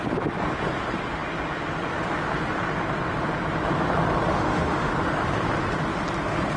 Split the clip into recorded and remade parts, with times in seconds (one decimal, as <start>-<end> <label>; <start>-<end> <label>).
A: 0.0-4.3 recorded; 4.3-4.9 remade; 4.9-6.6 recorded